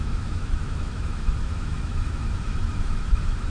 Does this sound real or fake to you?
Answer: fake